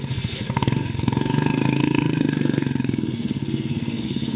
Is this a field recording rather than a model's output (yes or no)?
no